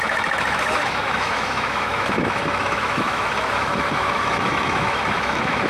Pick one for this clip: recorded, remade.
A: remade